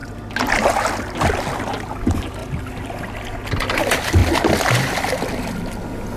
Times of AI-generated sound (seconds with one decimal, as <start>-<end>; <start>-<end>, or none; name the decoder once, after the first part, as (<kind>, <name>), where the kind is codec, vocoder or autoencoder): none

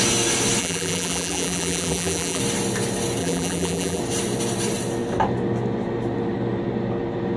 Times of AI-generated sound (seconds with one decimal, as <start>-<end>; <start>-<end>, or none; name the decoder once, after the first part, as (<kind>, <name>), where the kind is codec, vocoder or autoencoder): 0.6-2.4 (vocoder, BigVGAN v2); 3.2-4.0

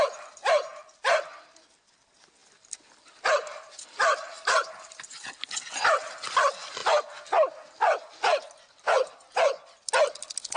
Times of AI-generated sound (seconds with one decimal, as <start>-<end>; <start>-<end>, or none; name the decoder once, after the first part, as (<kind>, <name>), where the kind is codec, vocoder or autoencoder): 0.7-1.9 (vocoder, BigVGAN v2); 2.4-5.0

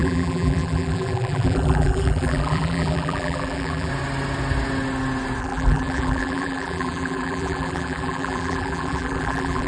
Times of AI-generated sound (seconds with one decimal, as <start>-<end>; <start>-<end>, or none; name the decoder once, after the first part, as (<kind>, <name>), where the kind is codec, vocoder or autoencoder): 0.0-3.9 (vocoder, BigVGAN v2); 5.4-9.7

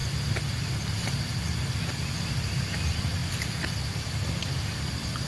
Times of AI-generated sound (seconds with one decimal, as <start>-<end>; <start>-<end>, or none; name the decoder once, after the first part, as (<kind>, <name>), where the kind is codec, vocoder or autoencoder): 2.6-5.3 (vocoder, BigVGAN v2)

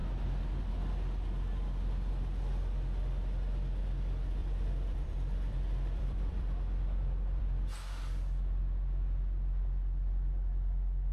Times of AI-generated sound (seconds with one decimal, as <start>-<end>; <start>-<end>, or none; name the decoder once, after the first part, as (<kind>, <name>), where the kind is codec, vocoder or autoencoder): 4.4-7.4 (vocoder, BigVGAN v2)

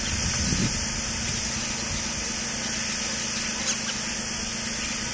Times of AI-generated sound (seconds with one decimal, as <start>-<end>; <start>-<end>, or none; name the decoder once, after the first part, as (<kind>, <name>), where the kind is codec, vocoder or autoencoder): none